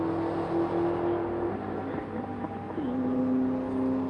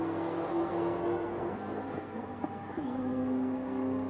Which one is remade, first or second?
second